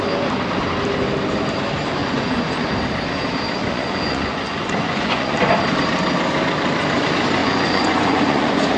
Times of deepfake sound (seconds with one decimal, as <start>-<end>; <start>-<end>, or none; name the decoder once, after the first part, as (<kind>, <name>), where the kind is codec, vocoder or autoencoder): 2.0-2.7 (vocoder, Vocos); 3.6-5.4; 7.4-8.8